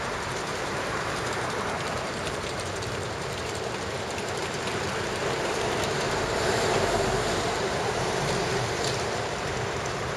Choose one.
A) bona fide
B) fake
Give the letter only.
B